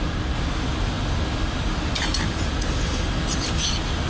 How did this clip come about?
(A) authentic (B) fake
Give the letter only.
A